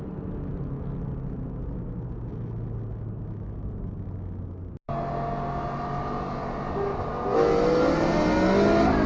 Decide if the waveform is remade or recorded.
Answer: recorded